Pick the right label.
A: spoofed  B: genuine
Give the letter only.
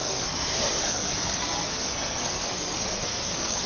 A